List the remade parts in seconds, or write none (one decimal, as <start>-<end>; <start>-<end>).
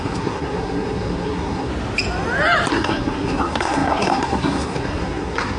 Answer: 0.0-1.7; 2.7-5.6